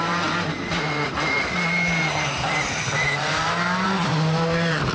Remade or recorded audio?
remade